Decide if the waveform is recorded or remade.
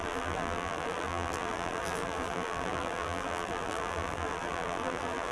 remade